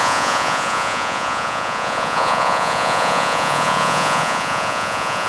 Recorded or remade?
remade